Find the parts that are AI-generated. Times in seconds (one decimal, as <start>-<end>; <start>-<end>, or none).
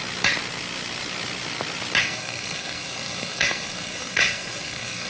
2.0-5.1